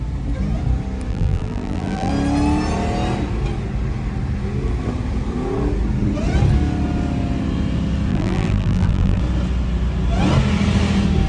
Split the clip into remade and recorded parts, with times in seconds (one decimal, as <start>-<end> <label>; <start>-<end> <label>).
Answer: 0.0-1.1 recorded; 1.1-2.1 remade; 2.1-8.1 recorded; 8.1-9.2 remade; 9.2-11.3 recorded